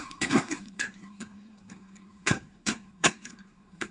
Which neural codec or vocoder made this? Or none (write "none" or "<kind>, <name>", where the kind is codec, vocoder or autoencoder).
codec, SNAC